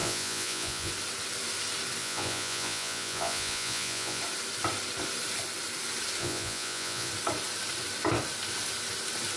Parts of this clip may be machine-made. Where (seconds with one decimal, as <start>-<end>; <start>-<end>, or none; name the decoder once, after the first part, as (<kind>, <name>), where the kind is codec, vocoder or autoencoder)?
0.0-0.9 (vocoder, Vocos); 2.0-4.2; 6.2-7.1